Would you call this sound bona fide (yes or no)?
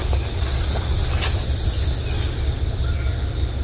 yes